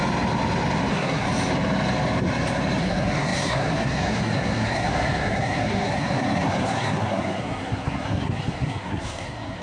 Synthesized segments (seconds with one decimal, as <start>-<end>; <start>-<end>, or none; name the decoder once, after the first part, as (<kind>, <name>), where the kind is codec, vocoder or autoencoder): 0.9-1.3 (codec, SNAC); 2.8-9.6